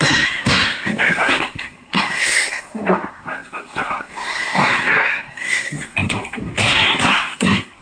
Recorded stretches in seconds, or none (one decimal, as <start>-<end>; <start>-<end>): none